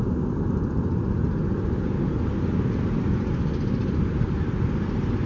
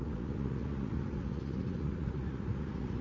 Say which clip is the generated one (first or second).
second